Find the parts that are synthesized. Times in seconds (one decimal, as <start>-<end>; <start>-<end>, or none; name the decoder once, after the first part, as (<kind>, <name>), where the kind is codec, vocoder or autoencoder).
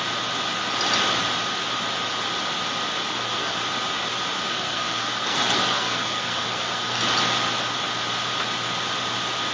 3.0-3.6 (codec, SNAC); 4.5-7.0